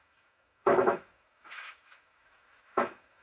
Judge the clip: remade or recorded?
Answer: remade